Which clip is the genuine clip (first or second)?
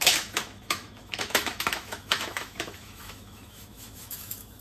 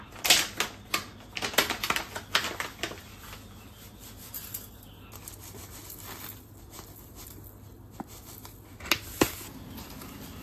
second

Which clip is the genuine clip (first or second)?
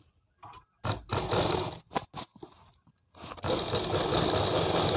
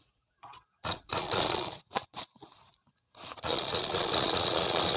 first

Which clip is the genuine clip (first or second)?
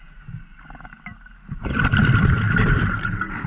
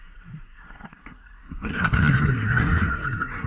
first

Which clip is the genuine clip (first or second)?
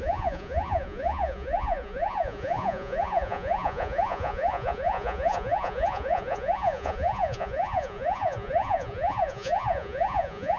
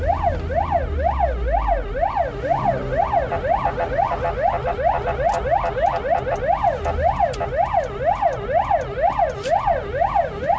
second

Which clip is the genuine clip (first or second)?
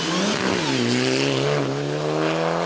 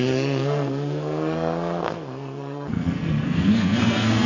first